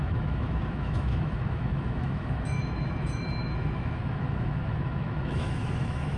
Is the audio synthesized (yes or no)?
yes